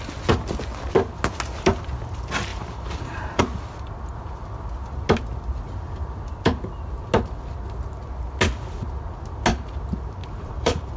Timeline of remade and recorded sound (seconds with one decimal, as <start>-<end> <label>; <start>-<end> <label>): 0.0-2.5 recorded; 2.5-3.4 remade; 3.4-10.2 recorded; 10.2-11.0 remade